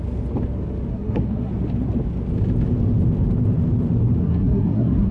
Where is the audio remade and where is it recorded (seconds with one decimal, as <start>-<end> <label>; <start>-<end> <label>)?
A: 0.0-0.9 recorded; 0.9-1.5 remade; 1.5-4.2 recorded; 4.2-5.1 remade